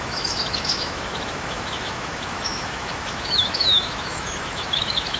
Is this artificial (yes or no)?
yes